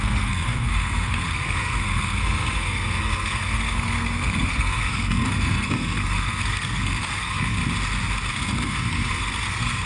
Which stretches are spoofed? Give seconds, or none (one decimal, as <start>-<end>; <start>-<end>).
0.0-7.6; 8.3-9.9